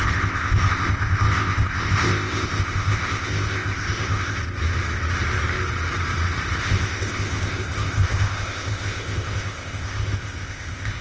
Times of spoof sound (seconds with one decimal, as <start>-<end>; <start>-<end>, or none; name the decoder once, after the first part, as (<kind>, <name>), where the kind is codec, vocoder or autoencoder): 0.0-4.4 (codec, ZipCodec); 6.6-11.0